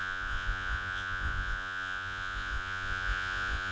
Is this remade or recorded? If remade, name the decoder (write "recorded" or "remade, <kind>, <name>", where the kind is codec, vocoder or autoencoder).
remade, vocoder, Vocos